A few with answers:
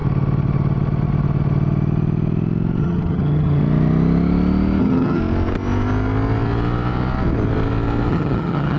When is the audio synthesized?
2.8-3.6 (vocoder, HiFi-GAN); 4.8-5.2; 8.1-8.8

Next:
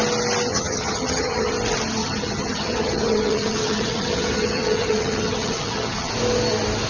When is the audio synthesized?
0.5-1.5 (vocoder, HiFi-GAN); 2.0-6.1

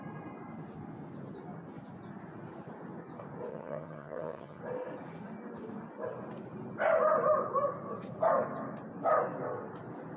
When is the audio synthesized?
3.5-4.6 (vocoder, HiFi-GAN)